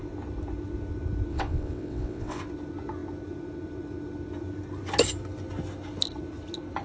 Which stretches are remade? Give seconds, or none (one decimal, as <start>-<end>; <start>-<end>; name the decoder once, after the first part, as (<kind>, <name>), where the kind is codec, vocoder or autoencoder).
1.3-2.4 (vocoder, WaveNeXt)